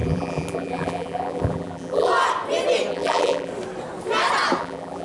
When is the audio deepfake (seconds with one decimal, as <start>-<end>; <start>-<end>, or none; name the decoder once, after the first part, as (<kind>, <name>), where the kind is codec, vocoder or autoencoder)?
0.0-2.1 (vocoder, BigVGAN v2); 2.9-3.5; 4.6-5.0